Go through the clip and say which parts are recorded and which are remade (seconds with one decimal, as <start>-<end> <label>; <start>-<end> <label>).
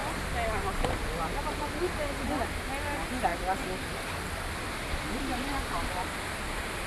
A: 0.0-6.9 recorded